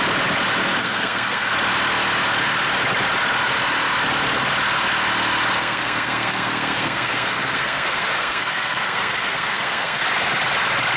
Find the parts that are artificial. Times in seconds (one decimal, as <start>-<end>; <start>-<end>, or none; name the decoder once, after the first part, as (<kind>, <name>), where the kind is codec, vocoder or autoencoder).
0.8-1.5 (codec, SNAC); 5.6-10.0

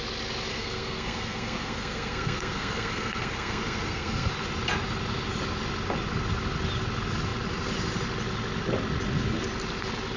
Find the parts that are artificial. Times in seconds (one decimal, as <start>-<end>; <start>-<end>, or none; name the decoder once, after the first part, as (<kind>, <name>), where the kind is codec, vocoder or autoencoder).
0.5-4.3 (codec, SNAC)